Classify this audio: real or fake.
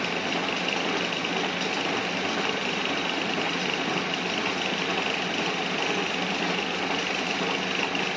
real